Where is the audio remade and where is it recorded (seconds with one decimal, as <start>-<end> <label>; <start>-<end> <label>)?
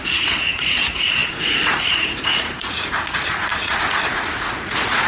0.0-5.1 remade